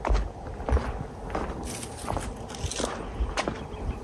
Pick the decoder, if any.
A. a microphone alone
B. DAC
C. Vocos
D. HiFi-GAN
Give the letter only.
A